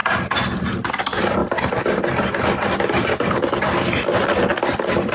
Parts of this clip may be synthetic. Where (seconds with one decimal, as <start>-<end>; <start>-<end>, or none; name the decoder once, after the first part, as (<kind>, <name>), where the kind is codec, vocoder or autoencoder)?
0.9-1.4 (vocoder, BigVGAN v2); 3.9-5.1